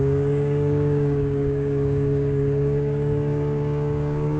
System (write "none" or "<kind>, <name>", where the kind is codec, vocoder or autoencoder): codec, DAC